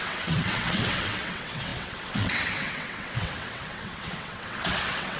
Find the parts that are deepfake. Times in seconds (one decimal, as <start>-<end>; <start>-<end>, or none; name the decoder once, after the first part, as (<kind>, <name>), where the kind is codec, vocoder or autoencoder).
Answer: 0.0-5.2 (vocoder, WaveNeXt)